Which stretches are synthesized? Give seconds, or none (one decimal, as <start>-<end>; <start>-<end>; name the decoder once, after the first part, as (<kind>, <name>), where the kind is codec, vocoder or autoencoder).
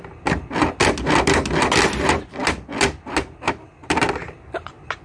none